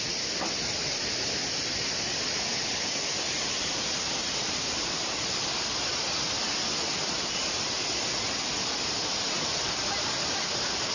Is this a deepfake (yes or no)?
no